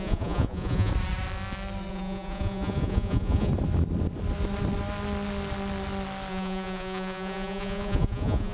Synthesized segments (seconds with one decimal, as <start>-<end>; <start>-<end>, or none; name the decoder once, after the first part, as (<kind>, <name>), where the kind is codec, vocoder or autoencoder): 0.0-0.9 (vocoder, Vocos); 1.9-3.5; 6.3-8.5